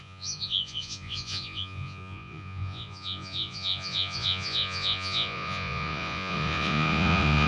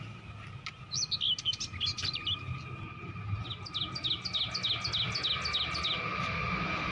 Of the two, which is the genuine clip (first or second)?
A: second